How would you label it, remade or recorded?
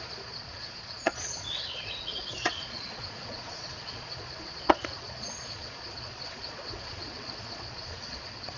remade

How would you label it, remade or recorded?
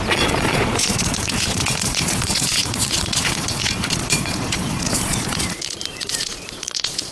remade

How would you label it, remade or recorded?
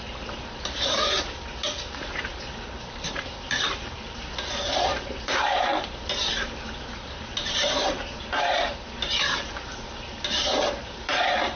remade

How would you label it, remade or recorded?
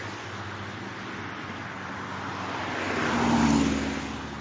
recorded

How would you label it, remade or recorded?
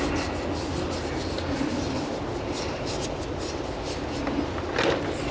recorded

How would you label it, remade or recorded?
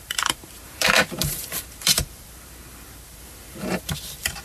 remade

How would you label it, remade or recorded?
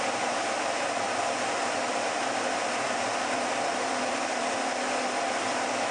remade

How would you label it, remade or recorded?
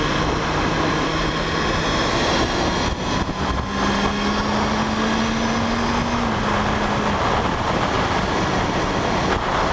recorded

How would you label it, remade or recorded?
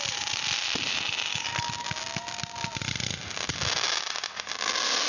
recorded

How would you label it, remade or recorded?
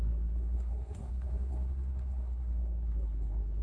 remade